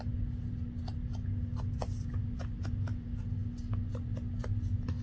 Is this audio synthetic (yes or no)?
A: no